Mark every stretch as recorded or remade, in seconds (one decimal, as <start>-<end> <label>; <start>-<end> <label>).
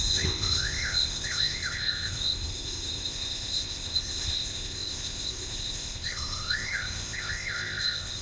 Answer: 0.0-8.2 remade